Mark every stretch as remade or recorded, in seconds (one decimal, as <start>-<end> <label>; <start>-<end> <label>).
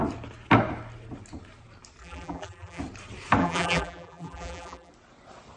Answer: 0.0-2.0 recorded; 2.0-2.8 remade; 2.8-3.4 recorded; 3.4-4.9 remade; 4.9-5.6 recorded